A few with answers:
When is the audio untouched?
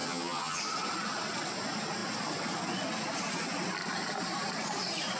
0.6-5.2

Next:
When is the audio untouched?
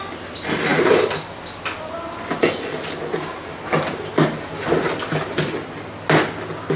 0.0-0.7; 2.1-6.8